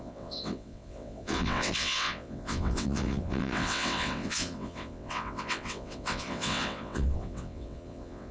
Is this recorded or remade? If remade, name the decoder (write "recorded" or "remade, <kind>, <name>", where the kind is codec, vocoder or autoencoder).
remade, vocoder, WaveNeXt